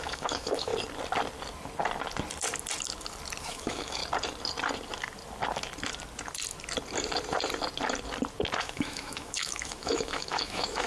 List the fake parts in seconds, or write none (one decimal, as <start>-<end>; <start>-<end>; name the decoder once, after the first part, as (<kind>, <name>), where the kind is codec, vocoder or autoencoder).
0.0-0.7 (autoencoder, DAC-VAE); 3.4-4.0; 8.6-10.9